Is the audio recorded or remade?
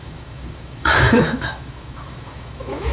remade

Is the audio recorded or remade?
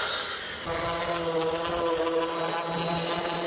recorded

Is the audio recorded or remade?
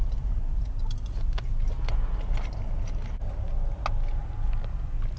recorded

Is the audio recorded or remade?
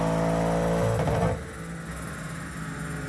recorded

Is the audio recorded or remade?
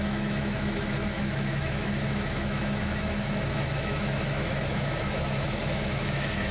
remade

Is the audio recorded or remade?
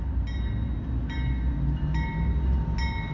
recorded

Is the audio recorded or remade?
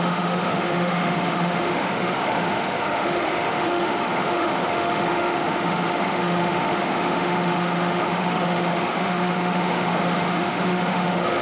remade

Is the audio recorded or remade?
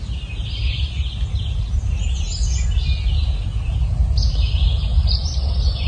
recorded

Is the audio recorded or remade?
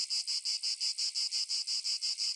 recorded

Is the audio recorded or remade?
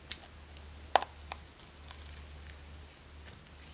recorded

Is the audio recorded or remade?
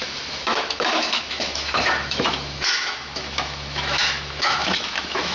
remade